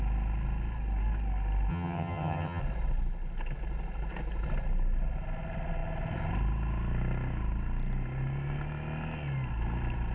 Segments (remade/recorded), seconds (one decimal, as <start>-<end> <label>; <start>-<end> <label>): 0.0-1.7 recorded; 1.7-2.6 remade; 2.6-10.1 recorded